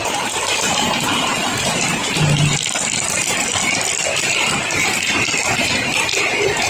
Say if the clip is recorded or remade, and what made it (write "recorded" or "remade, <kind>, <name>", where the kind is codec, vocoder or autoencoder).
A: recorded